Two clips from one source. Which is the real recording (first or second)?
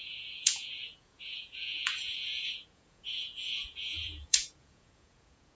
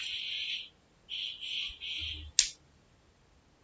second